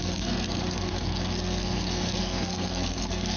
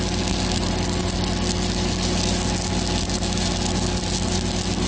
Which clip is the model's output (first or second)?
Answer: first